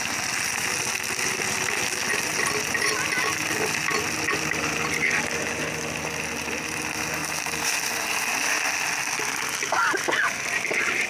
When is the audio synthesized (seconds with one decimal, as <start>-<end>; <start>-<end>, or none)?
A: none